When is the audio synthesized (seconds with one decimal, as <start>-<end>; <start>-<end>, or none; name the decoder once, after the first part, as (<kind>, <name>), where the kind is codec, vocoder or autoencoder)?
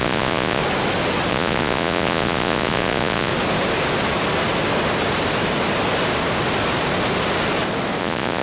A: 0.0-0.6 (vocoder, Vocos); 1.3-3.3; 8.0-8.4